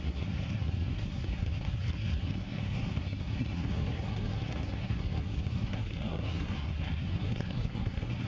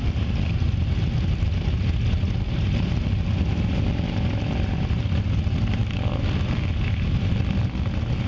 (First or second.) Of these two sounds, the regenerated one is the first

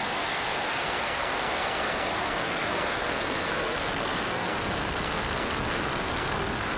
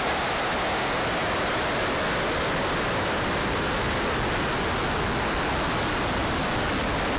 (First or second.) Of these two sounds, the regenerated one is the first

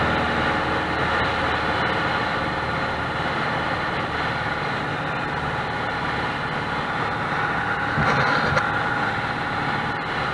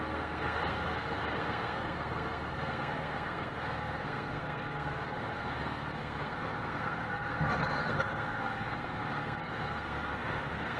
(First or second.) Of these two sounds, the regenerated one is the second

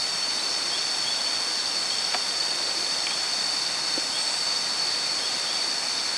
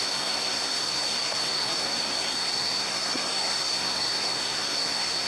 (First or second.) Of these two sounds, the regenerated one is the second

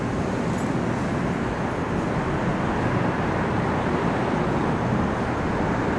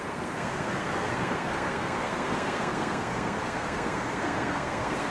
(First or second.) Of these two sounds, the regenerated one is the second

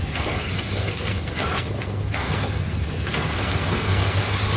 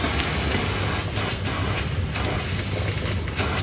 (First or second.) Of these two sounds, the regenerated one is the first